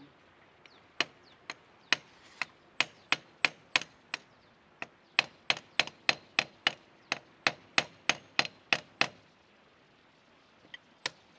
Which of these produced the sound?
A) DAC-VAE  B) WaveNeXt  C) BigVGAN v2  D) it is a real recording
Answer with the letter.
D